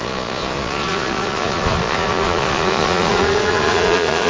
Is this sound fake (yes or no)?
yes